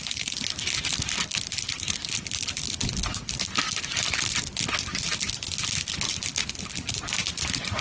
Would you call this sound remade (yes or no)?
no